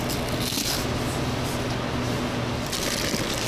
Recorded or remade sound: recorded